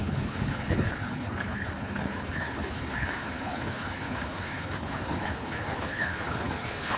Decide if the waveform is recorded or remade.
remade